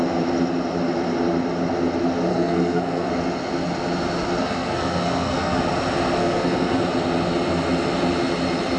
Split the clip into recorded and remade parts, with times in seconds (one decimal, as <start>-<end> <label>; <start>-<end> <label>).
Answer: 0.0-2.3 recorded; 2.3-3.1 remade; 3.1-4.4 recorded; 4.4-5.6 remade; 5.6-6.2 recorded; 6.2-6.8 remade; 6.8-8.8 recorded